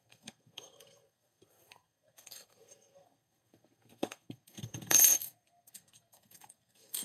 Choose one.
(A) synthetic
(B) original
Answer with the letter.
A